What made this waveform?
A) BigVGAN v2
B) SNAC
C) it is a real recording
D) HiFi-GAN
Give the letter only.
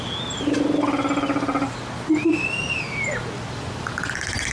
C